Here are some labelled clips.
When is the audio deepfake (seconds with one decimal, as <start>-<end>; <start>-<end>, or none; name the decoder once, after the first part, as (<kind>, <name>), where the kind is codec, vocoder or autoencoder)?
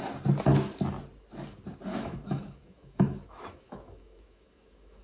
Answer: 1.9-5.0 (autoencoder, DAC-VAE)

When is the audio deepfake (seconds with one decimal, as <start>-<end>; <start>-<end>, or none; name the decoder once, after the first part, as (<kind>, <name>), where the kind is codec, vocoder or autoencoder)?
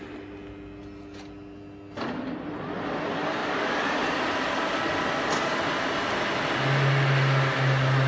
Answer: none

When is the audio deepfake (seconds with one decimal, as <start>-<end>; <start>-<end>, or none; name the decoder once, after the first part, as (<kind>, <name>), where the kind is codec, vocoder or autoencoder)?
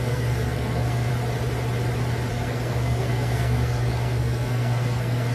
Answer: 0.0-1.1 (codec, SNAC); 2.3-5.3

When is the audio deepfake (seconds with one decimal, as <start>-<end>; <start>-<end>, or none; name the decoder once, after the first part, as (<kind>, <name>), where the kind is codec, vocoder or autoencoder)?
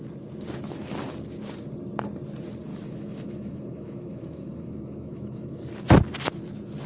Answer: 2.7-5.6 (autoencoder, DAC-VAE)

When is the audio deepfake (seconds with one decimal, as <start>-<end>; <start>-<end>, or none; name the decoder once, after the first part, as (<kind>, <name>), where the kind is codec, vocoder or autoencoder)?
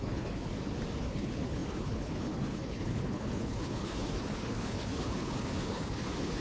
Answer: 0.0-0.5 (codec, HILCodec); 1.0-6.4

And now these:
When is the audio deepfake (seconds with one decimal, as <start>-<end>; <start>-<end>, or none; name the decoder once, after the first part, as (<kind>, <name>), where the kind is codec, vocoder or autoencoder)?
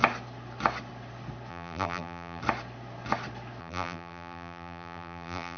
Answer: 1.5-2.4 (vocoder, BigVGAN v2); 3.6-5.6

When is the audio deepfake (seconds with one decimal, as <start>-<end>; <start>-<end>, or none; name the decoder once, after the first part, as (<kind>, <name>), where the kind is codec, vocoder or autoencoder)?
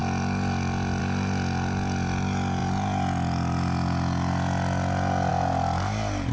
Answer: none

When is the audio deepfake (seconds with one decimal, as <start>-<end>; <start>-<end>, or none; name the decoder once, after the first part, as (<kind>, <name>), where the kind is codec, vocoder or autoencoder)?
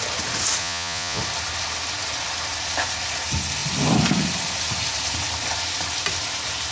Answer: 0.6-1.2 (vocoder, Vocos)